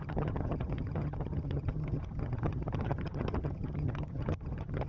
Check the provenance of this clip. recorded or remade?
remade